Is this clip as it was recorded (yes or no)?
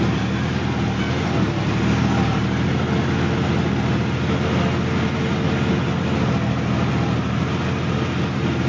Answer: yes